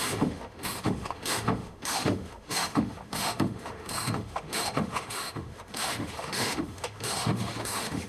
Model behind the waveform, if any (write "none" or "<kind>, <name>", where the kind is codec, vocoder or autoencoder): autoencoder, DAC-VAE